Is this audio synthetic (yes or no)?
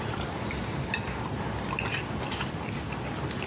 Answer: no